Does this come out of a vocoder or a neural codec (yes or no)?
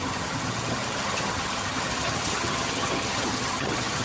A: yes